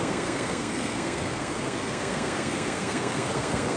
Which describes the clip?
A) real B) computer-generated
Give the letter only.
B